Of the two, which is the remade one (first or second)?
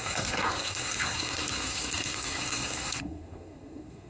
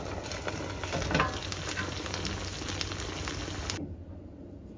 first